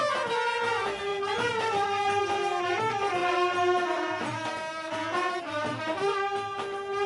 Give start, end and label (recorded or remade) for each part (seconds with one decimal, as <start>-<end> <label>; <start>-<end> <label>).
0.0-1.1 recorded; 1.1-2.2 remade; 2.2-3.2 recorded; 3.2-4.2 remade; 4.2-7.1 recorded